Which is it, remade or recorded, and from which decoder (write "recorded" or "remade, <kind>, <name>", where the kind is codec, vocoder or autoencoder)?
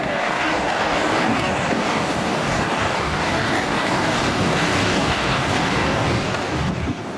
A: remade, codec, DAC